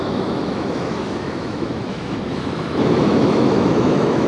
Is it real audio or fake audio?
fake